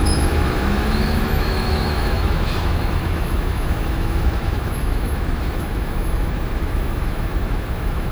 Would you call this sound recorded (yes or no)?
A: no